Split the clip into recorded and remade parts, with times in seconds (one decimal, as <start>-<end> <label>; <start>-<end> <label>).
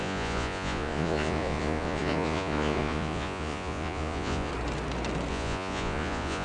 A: 0.0-4.5 remade; 4.5-5.3 recorded; 5.3-6.4 remade